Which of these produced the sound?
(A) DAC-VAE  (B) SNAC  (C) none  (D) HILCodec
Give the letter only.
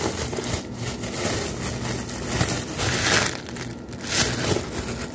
C